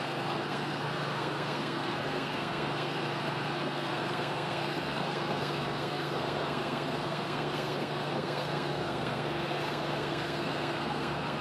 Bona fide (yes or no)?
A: no